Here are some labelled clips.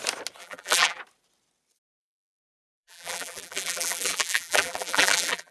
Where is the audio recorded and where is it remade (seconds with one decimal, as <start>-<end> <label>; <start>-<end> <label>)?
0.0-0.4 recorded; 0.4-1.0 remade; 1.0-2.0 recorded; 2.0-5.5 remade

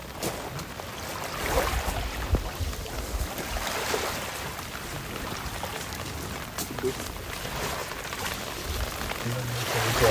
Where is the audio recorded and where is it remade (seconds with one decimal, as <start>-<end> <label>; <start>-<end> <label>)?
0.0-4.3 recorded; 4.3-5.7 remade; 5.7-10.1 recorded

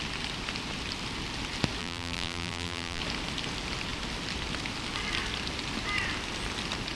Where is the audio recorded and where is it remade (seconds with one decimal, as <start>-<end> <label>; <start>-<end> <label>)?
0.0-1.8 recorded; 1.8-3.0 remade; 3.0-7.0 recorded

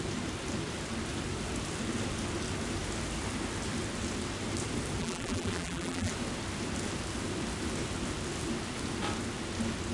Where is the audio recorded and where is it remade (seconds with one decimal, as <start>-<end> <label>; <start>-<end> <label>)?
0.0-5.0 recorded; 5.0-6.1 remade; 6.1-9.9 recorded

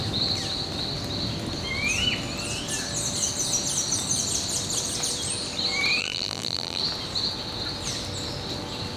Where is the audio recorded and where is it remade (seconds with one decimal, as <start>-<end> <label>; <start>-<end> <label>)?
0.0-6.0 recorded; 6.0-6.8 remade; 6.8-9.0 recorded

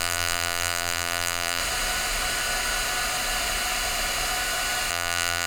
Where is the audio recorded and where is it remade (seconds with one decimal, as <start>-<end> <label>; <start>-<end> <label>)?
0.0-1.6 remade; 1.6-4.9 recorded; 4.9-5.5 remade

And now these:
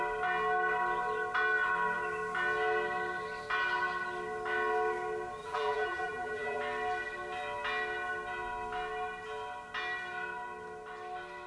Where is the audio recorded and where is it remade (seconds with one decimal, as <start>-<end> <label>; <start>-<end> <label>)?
0.0-5.4 recorded; 5.4-6.6 remade; 6.6-11.5 recorded

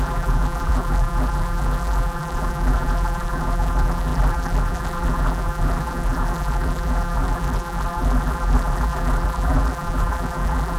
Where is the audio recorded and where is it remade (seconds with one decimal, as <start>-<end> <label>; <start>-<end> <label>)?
0.0-10.8 remade